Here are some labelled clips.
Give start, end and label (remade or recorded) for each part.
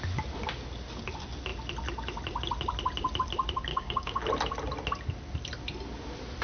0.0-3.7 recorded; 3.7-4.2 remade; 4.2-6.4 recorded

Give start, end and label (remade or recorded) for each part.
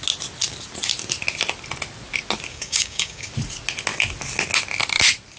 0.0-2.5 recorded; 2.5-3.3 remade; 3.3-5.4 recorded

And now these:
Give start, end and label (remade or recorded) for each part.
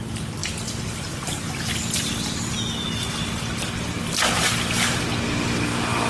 0.0-6.1 recorded